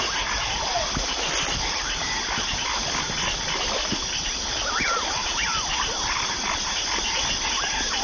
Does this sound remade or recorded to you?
recorded